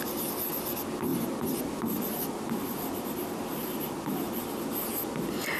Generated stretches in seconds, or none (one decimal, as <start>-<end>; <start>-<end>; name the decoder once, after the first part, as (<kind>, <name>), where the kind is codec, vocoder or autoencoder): none